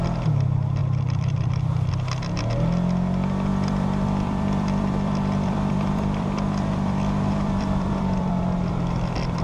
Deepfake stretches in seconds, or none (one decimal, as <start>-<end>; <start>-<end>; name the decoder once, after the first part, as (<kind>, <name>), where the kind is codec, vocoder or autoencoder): 0.8-1.9 (vocoder, BigVGAN v2); 3.5-8.4